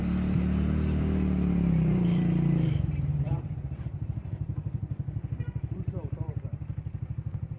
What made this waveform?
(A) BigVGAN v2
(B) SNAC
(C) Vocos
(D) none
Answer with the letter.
A